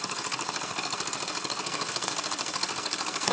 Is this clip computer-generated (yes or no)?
yes